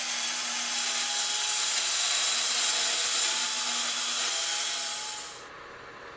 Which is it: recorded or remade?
recorded